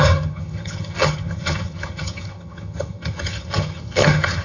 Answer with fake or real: fake